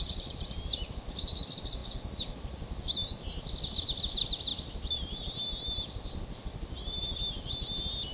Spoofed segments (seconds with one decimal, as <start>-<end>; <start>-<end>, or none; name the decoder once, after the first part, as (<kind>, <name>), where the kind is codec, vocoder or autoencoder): none